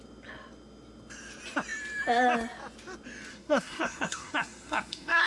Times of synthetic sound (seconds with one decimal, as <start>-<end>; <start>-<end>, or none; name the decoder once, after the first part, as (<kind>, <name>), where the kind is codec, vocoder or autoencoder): 3.3-5.3 (codec, SNAC)

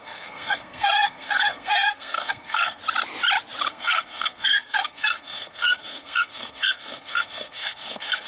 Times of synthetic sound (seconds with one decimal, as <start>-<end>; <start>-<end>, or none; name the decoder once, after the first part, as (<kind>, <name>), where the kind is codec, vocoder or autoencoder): 0.0-2.8 (codec, SNAC); 3.7-8.3

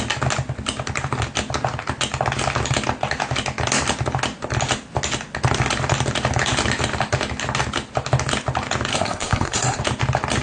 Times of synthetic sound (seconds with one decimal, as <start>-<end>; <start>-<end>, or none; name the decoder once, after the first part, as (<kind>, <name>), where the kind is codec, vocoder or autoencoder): 8.9-9.8 (codec, SNAC)

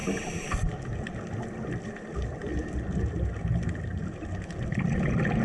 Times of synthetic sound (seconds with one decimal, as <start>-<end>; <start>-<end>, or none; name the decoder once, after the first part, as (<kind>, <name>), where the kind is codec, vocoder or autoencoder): none

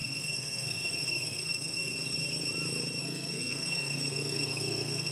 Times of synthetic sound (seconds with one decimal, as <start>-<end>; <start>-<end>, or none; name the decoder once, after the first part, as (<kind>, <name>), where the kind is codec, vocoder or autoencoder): 0.0-1.9 (codec, SNAC); 3.0-5.1

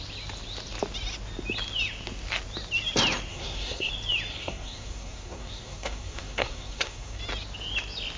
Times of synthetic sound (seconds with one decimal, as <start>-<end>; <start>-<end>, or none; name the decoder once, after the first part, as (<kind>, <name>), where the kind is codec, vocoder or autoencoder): 3.3-3.9 (codec, SNAC); 4.3-7.2